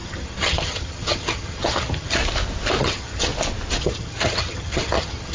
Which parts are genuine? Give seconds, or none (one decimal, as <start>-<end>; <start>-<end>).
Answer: 2.2-2.8; 3.3-3.8